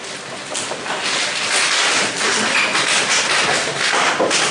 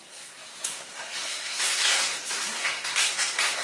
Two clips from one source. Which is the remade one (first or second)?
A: second